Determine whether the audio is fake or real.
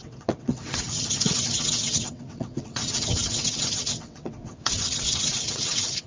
fake